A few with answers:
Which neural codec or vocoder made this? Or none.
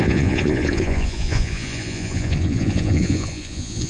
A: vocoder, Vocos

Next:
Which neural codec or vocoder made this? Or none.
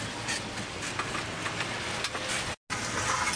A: none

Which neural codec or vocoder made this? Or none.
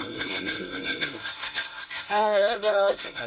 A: codec, SNAC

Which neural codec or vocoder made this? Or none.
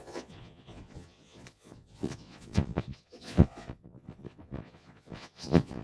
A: vocoder, Vocos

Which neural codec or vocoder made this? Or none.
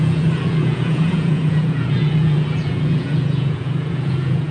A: vocoder, Vocos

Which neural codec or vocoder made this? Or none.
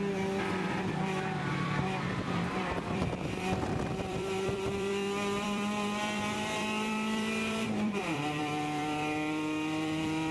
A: vocoder, BigVGAN v2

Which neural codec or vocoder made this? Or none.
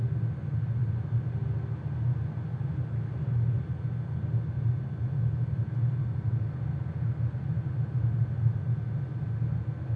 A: none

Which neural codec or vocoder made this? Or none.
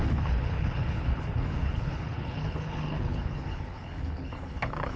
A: codec, HILCodec